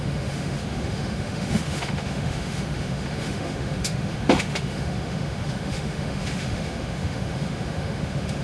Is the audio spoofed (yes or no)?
yes